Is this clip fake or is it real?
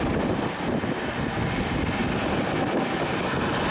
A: real